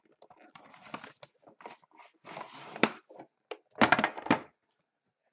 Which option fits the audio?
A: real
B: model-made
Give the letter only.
A